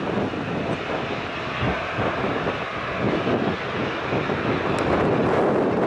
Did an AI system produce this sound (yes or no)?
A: no